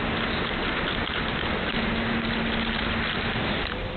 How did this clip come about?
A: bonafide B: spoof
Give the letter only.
A